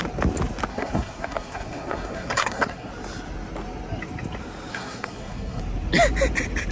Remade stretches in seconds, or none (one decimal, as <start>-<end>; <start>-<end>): 0.7-2.9; 4.7-5.6